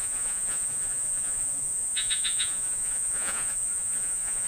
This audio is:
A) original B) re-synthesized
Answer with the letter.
B